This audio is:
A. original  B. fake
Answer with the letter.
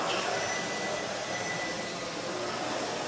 A